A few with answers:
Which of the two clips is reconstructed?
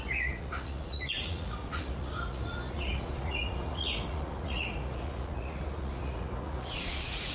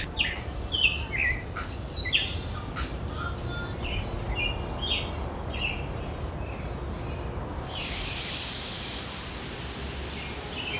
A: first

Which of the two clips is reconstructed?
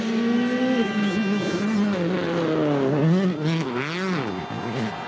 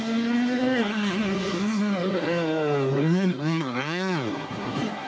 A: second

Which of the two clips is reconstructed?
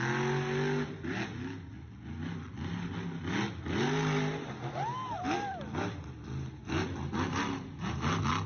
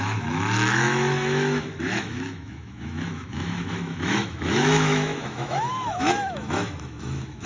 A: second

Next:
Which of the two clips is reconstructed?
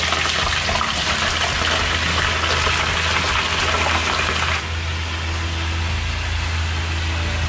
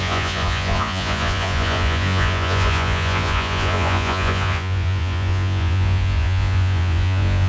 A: second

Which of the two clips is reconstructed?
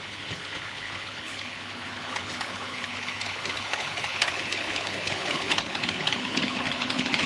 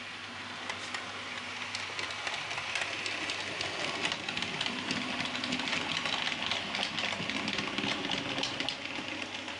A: first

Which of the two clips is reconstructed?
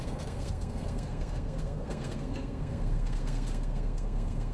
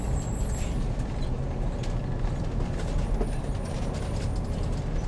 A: first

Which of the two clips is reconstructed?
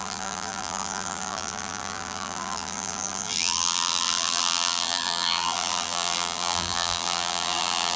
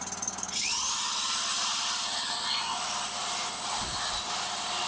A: first